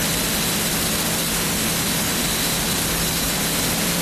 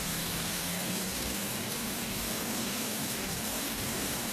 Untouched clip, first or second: first